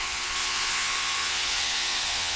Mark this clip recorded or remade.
remade